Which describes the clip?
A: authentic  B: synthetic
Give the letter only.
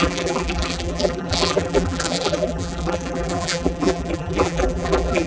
B